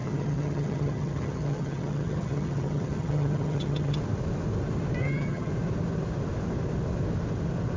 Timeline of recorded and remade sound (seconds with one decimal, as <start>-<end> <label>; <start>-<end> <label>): 0.0-4.0 remade; 4.0-5.0 recorded; 5.0-5.5 remade; 5.5-7.8 recorded

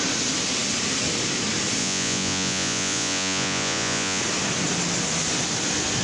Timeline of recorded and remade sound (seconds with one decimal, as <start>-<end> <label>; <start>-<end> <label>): 0.0-1.8 recorded; 1.8-4.2 remade; 4.2-6.0 recorded

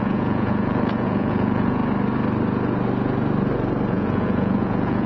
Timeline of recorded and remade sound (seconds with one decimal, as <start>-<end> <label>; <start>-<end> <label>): 0.0-1.8 remade; 1.8-3.9 recorded; 3.9-5.1 remade